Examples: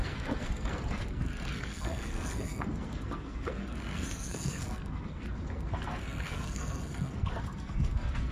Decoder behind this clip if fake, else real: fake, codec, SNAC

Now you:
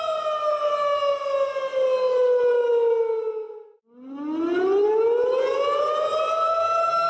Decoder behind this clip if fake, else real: real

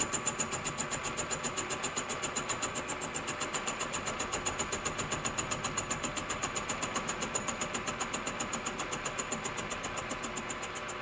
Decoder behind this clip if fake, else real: real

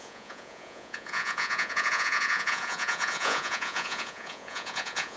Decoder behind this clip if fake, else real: fake, vocoder, Vocos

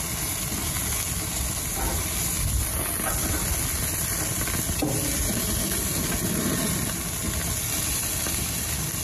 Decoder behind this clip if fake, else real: real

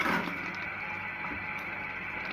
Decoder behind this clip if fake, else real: fake, vocoder, BigVGAN v2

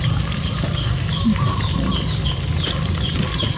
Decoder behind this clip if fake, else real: real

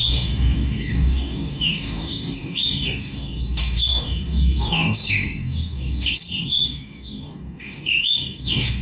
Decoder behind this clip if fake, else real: fake, codec, DAC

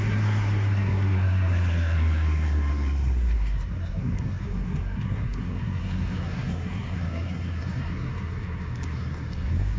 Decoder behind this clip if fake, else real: fake, codec, SNAC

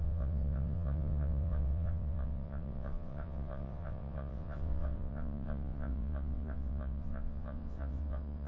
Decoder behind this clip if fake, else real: fake, vocoder, WaveNeXt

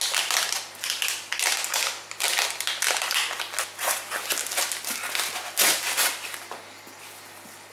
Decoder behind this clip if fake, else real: real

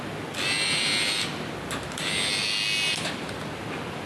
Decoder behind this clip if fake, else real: real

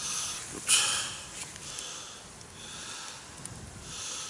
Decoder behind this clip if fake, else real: real